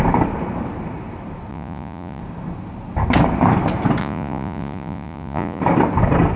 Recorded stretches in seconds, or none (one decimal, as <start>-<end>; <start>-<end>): 0.0-1.5; 2.2-4.0; 5.6-6.4